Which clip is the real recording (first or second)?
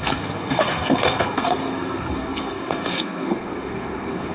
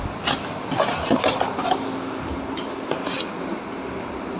second